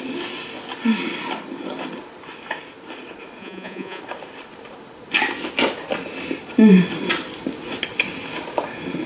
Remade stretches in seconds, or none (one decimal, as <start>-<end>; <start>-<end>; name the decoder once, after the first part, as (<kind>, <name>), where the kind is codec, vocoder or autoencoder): 3.4-4.0 (vocoder, Vocos)